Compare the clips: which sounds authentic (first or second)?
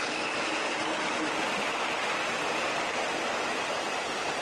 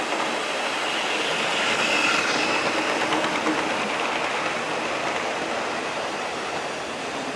second